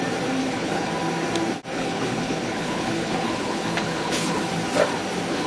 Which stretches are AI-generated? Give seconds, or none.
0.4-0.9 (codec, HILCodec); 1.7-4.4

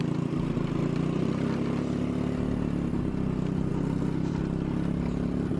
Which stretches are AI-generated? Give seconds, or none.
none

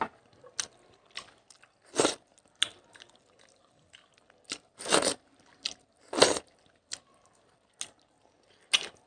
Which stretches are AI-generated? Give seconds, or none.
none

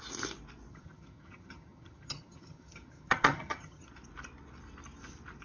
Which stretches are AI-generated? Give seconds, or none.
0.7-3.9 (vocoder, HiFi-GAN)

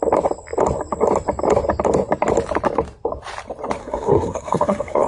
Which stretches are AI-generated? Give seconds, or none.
3.8-5.1 (codec, SNAC)